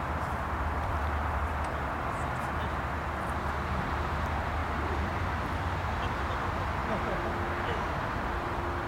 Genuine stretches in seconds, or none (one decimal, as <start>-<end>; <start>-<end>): 6.8-8.0